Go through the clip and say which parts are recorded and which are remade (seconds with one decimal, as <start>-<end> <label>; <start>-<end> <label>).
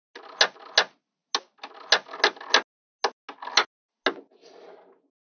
0.0-5.4 recorded